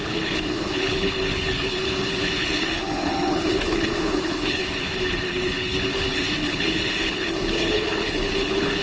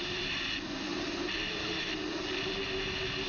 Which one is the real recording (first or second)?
second